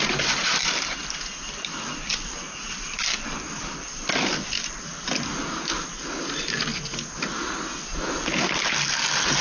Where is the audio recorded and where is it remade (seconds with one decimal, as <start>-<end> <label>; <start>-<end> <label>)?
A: 0.0-9.4 recorded